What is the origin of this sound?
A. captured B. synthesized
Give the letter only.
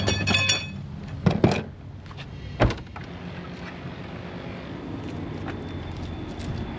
A